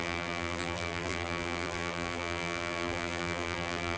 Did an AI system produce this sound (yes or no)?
yes